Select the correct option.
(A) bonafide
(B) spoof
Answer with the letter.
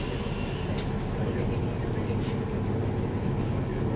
A